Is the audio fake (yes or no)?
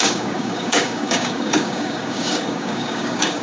yes